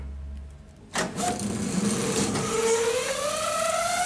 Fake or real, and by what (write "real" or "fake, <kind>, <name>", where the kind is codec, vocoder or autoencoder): real